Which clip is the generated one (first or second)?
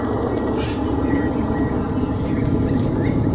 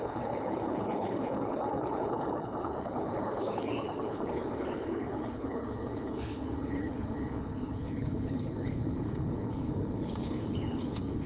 second